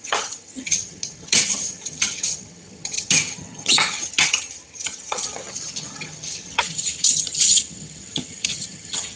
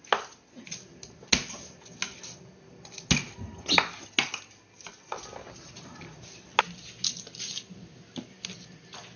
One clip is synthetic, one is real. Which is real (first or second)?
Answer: second